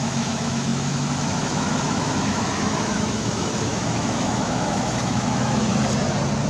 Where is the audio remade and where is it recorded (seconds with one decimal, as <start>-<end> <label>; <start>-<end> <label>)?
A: 0.0-5.7 remade; 5.7-6.5 recorded